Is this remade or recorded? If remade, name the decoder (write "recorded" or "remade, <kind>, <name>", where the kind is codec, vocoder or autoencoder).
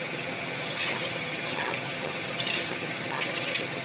remade, vocoder, HiFi-GAN